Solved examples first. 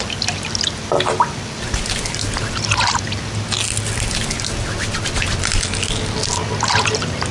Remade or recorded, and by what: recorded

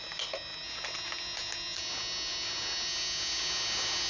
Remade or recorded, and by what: recorded